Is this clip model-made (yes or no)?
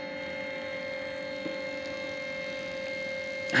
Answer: no